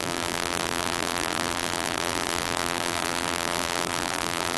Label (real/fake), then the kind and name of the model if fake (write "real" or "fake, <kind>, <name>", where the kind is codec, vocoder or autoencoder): fake, vocoder, BigVGAN v2